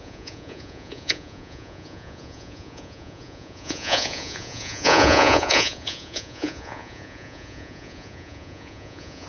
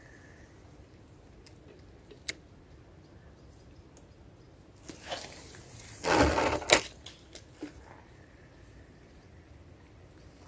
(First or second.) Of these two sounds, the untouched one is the second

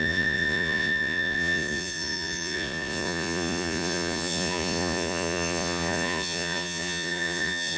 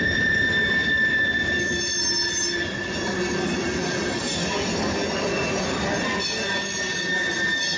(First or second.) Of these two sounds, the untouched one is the second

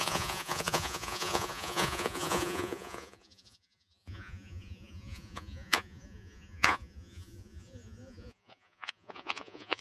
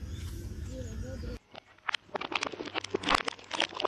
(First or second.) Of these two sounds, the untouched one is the second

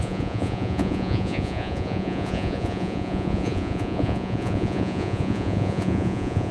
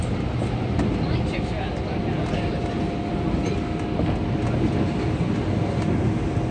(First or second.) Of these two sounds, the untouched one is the second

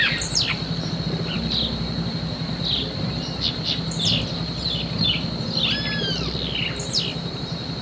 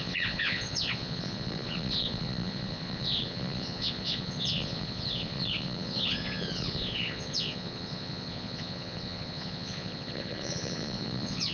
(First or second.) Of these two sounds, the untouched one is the first